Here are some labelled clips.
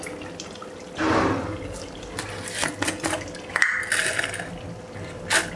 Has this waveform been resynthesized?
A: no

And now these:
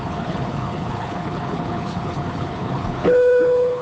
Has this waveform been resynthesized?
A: yes